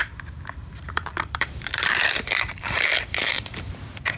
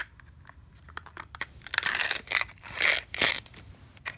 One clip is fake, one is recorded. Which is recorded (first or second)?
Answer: second